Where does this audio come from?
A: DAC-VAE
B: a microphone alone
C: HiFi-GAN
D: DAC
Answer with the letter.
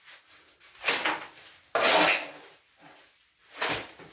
B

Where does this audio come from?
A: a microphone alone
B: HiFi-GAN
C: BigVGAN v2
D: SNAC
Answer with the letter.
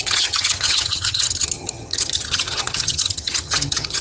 B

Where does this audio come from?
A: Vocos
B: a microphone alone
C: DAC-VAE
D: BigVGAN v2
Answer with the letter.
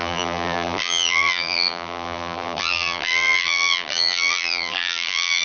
D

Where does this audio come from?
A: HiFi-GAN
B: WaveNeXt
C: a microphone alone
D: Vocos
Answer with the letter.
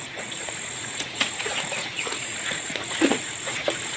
D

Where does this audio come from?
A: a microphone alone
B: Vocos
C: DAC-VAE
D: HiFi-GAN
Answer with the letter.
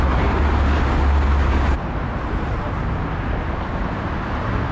A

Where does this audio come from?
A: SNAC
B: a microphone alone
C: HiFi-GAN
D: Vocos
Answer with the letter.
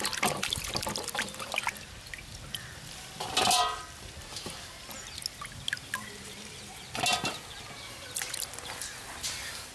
B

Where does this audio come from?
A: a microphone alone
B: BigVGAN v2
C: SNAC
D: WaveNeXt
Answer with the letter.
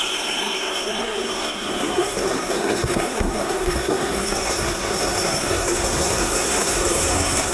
C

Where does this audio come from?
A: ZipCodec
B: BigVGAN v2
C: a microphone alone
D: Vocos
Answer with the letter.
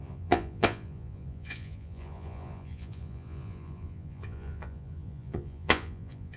D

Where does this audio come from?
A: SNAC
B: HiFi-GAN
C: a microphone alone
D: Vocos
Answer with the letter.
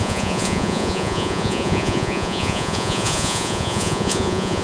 D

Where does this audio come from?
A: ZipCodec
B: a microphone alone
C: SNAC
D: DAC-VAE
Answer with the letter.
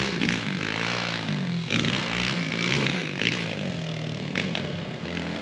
C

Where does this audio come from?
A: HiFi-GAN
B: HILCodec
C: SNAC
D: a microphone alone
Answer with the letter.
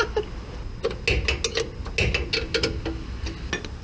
D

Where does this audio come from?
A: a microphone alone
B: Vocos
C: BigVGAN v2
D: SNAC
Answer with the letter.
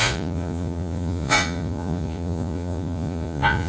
B